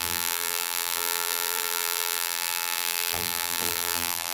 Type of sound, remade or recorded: remade